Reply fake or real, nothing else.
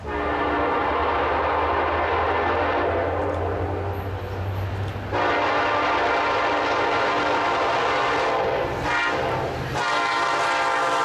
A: real